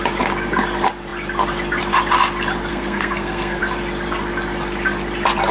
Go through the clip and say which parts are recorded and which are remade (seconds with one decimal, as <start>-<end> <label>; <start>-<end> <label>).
0.0-2.7 recorded; 2.7-3.6 remade; 3.6-5.5 recorded